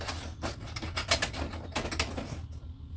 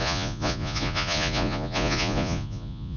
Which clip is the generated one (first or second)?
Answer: second